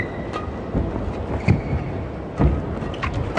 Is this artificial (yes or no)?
no